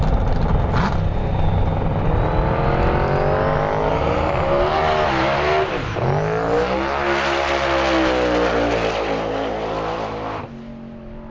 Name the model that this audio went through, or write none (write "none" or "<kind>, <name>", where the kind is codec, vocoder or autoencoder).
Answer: none